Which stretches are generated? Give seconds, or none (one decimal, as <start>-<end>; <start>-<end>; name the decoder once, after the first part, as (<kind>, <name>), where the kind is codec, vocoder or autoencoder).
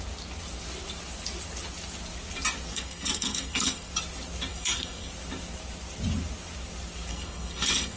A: 2.7-3.9 (codec, SNAC); 4.5-5.1; 7.1-8.0